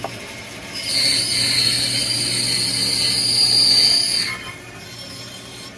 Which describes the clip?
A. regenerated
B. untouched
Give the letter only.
B